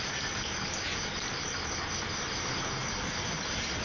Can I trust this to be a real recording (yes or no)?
yes